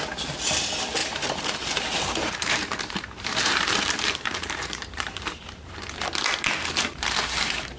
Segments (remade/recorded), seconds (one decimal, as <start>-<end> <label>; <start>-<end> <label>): 0.0-1.0 recorded; 1.0-5.7 remade; 5.7-7.8 recorded